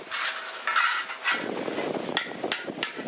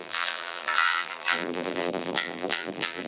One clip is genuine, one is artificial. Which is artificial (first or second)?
second